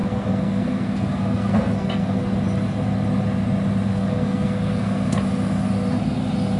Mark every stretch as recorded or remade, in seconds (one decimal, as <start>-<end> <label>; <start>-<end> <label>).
0.0-2.2 remade; 2.2-3.9 recorded; 3.9-5.2 remade; 5.2-6.6 recorded